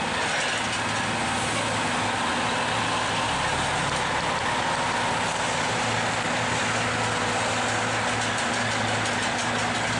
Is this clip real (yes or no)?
yes